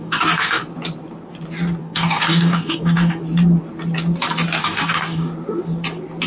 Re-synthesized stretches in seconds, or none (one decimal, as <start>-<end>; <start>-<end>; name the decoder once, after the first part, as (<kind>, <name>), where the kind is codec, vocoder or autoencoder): 0.0-0.6 (codec, DAC); 1.8-3.2; 4.6-5.3